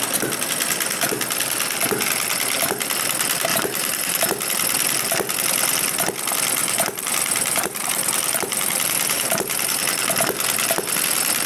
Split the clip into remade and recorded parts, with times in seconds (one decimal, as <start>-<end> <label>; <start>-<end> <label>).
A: 0.0-3.5 recorded; 3.5-4.2 remade; 4.2-6.6 recorded; 6.6-9.8 remade; 9.8-11.5 recorded